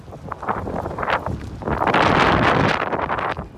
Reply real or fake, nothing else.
fake